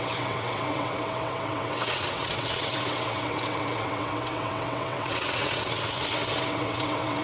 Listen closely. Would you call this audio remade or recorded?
remade